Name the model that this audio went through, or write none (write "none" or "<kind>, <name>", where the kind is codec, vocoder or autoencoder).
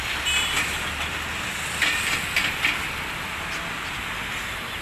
none